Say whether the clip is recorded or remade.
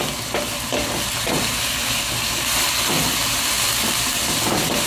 recorded